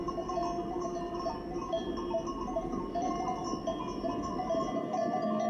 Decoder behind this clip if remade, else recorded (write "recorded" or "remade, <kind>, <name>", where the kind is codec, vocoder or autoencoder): recorded